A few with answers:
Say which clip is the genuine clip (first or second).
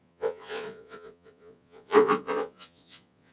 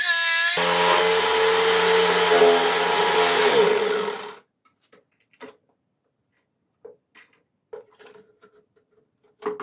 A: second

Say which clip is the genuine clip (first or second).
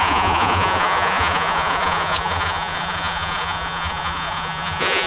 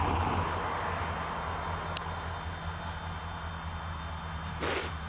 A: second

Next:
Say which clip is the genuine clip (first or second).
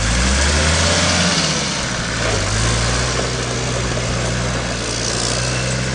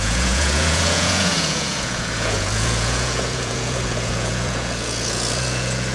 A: first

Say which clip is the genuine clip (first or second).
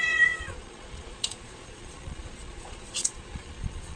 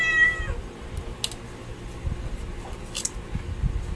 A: second